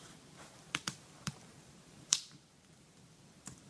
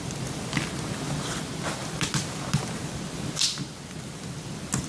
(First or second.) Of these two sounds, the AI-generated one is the first